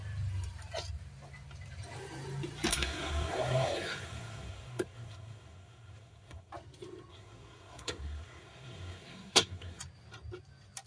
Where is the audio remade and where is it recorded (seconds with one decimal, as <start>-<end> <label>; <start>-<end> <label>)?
0.0-2.7 recorded; 2.7-6.5 remade; 6.5-7.1 recorded; 7.1-9.8 remade; 9.8-10.9 recorded